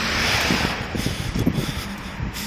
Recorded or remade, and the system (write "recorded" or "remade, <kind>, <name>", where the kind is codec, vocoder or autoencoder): remade, vocoder, BigVGAN v2